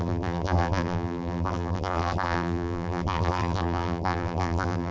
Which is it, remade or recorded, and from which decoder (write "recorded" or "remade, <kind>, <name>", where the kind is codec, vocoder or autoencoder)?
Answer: remade, vocoder, BigVGAN v2